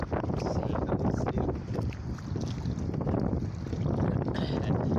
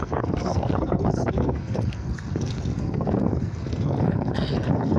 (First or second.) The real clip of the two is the first